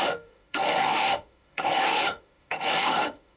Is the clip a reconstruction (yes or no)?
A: yes